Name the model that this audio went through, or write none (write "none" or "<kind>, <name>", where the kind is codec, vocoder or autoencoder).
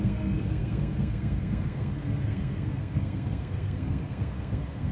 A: codec, SNAC